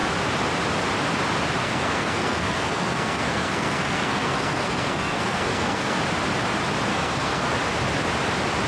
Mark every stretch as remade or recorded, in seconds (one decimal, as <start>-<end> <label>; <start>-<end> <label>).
0.0-1.6 recorded; 1.6-6.0 remade; 6.0-6.9 recorded; 6.9-7.5 remade; 7.5-8.7 recorded